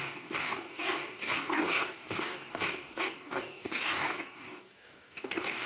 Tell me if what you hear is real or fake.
fake